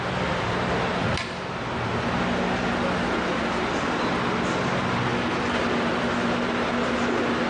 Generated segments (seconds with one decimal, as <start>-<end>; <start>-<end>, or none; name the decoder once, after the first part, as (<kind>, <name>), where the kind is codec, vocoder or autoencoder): 0.0-1.0 (vocoder, BigVGAN v2); 2.7-5.1